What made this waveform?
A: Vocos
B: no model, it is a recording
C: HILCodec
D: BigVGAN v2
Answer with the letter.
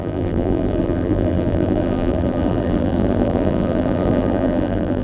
D